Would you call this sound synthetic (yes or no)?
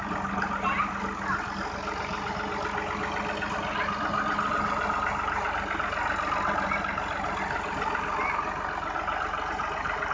no